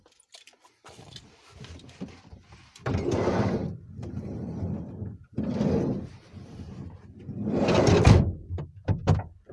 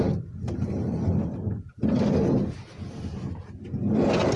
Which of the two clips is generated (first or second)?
first